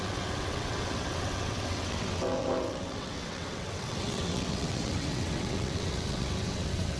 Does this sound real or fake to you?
fake